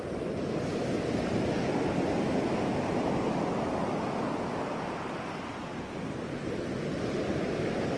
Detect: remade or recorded recorded